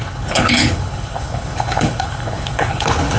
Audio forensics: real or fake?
fake